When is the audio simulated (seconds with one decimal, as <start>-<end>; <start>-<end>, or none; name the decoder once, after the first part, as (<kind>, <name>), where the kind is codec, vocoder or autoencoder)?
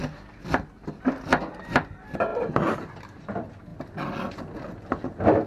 2.3-3.0 (vocoder, BigVGAN v2)